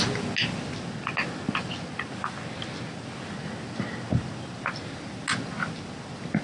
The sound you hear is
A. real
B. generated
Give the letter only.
A